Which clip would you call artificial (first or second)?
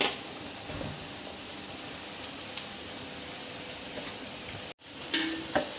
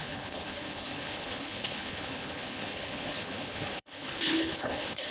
second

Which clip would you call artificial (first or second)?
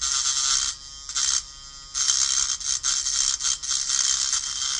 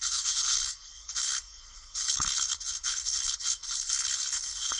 second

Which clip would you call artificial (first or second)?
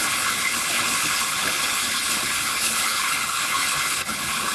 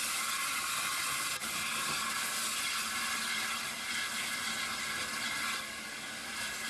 first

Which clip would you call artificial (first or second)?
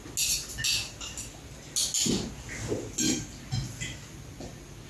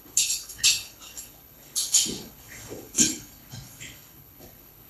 second